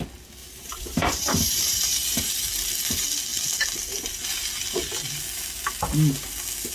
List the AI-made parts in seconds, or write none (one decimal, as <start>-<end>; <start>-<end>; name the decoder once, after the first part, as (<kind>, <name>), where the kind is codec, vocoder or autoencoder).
0.4-2.3 (vocoder, BigVGAN v2)